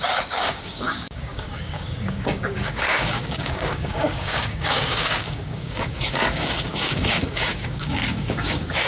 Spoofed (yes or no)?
yes